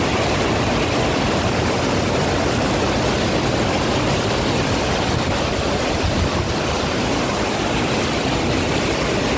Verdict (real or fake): real